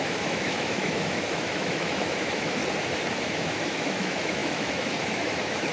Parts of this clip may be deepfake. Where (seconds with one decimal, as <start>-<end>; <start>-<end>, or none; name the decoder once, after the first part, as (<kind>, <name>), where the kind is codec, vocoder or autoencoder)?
0.0-2.6 (autoencoder, DAC-VAE); 3.2-5.7